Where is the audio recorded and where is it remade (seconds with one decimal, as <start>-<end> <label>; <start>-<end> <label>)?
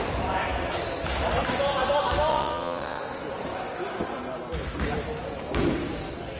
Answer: 0.0-2.3 recorded; 2.3-3.0 remade; 3.0-6.4 recorded